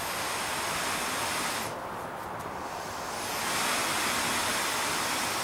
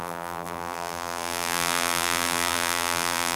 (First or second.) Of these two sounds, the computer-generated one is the second